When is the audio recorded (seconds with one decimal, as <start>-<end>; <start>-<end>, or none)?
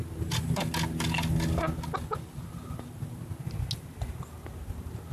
0.0-5.1